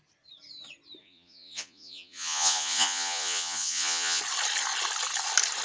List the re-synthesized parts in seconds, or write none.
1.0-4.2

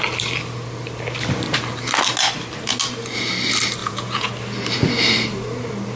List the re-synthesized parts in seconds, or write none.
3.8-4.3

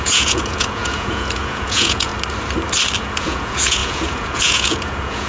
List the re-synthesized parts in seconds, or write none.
0.0-2.1; 3.0-5.3

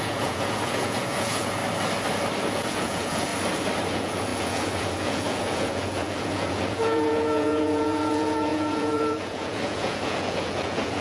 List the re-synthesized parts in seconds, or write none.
0.0-1.6; 2.4-3.3; 3.9-11.0